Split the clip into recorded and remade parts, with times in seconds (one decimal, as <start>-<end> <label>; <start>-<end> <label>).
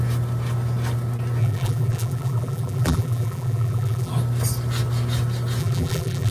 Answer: 0.0-1.4 recorded; 1.4-4.1 remade; 4.1-5.6 recorded; 5.6-6.3 remade